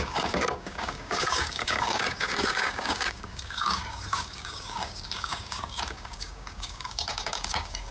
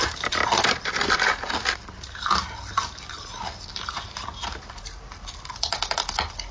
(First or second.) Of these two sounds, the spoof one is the first